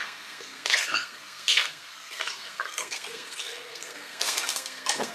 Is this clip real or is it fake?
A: fake